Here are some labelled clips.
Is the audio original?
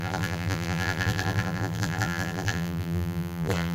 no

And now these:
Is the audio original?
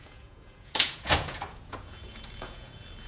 no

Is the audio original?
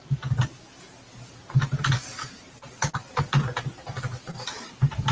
yes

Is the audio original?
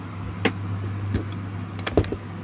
yes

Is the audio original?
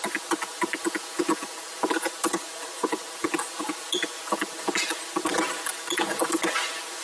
yes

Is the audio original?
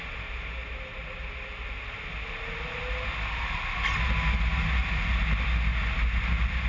yes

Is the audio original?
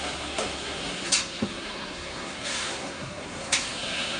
no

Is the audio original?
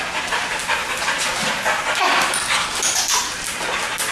yes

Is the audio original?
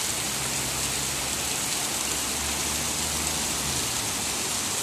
yes